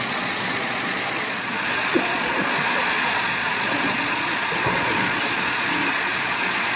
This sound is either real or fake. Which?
fake